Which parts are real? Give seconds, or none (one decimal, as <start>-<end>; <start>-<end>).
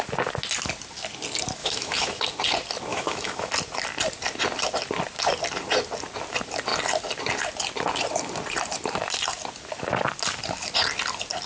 0.0-1.6; 2.2-2.9; 3.5-11.5